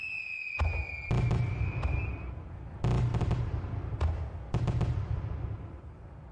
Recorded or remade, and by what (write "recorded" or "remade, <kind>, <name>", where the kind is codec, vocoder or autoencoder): recorded